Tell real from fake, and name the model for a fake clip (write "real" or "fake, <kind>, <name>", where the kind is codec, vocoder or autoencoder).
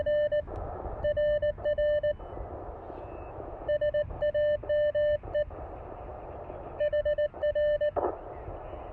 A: real